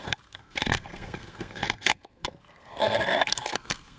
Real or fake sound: fake